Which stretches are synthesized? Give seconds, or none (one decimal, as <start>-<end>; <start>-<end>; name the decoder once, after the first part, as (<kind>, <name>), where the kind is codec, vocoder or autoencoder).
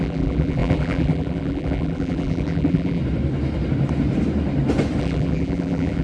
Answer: 0.0-3.0 (vocoder, BigVGAN v2); 5.0-6.0